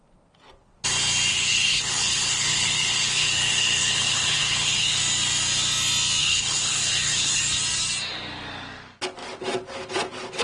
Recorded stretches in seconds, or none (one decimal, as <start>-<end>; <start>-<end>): 0.0-1.3; 5.0-6.2; 7.4-10.4